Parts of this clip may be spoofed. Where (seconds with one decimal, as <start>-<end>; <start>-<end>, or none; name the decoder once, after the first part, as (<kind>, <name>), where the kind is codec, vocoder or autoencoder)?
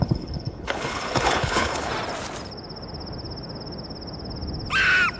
0.0-1.9 (codec, HILCodec)